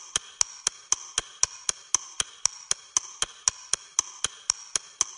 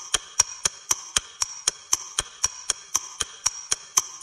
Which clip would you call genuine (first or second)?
first